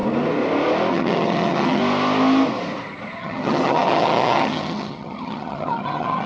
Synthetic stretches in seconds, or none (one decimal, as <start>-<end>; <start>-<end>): 0.9-1.8; 3.2-6.3